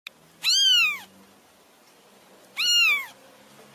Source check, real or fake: real